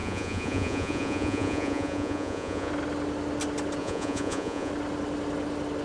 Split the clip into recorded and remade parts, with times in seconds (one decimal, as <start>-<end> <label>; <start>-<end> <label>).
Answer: 0.0-2.7 remade; 2.7-3.8 recorded; 3.8-4.7 remade; 4.7-5.8 recorded